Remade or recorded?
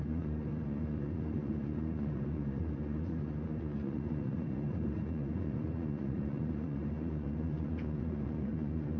remade